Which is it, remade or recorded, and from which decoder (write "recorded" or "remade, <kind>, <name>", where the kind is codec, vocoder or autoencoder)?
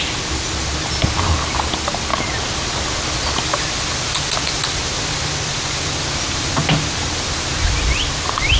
recorded